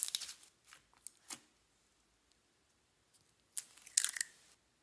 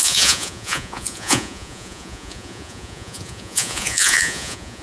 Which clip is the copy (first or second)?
second